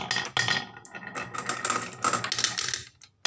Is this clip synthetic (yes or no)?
no